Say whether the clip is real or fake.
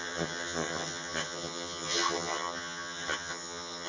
fake